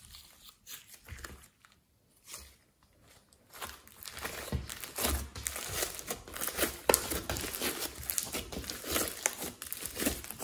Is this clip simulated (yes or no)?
no